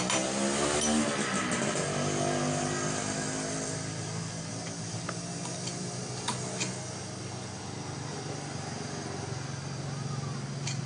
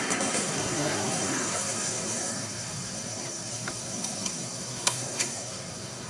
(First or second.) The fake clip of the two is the second